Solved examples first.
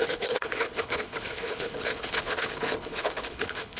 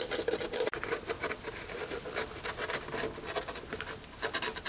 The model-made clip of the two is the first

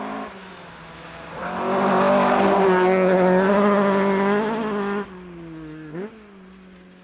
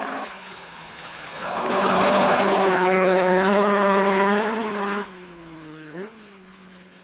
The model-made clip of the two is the second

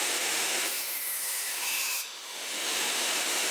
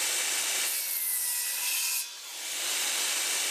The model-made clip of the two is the first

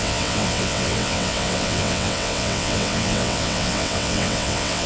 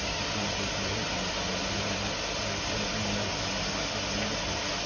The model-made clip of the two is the first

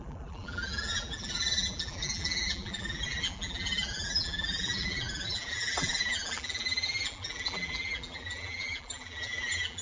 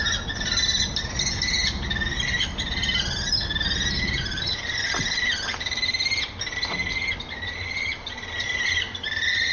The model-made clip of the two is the first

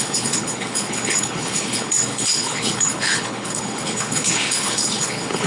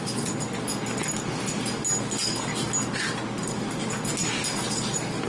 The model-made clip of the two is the first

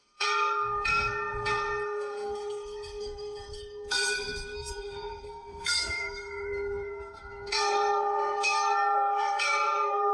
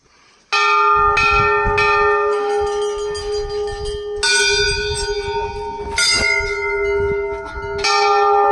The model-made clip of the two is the first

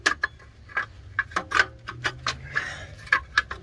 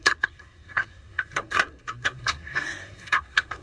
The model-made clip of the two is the second